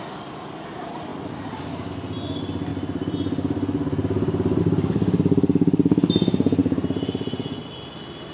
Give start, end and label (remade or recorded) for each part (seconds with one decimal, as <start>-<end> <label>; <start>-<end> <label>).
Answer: 0.0-8.3 recorded